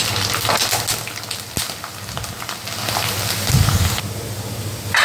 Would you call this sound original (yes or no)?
yes